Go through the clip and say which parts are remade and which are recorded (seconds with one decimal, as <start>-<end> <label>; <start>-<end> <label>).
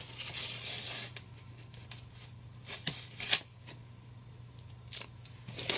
0.0-5.8 recorded